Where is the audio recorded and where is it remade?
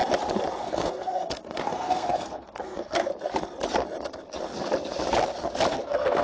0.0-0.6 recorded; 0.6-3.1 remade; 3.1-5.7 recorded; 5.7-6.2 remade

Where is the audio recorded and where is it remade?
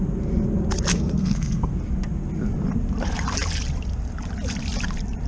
0.0-0.9 recorded; 0.9-1.7 remade; 1.7-5.3 recorded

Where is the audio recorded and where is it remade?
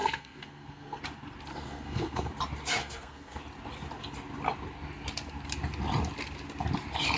0.0-1.0 remade; 1.0-1.5 recorded; 1.5-2.3 remade; 2.3-2.8 recorded; 2.8-3.4 remade; 3.4-7.2 recorded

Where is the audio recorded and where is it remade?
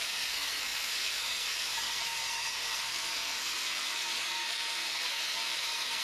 0.0-6.0 remade